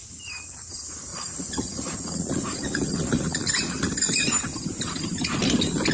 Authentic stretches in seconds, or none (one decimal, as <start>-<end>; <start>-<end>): 0.0-1.1; 3.5-5.9